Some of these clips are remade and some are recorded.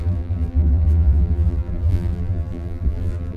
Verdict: remade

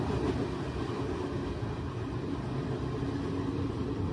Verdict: recorded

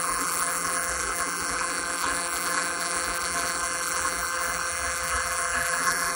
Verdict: remade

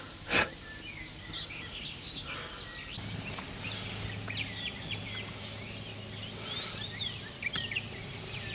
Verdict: recorded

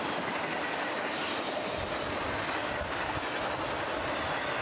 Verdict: recorded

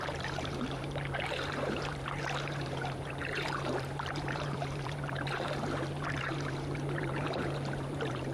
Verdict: remade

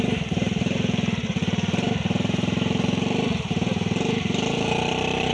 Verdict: remade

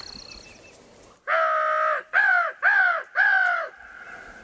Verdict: recorded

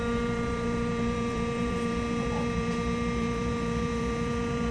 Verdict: remade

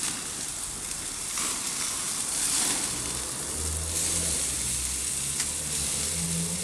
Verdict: recorded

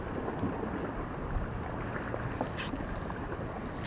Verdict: recorded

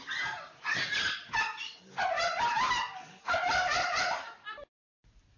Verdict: recorded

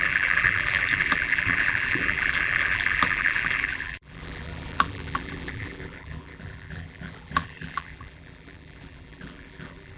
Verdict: remade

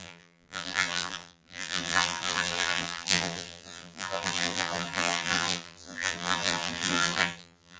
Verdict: remade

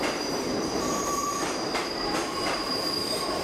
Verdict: remade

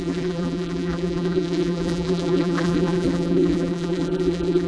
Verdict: remade